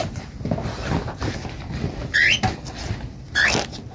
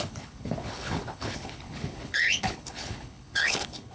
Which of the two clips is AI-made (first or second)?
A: second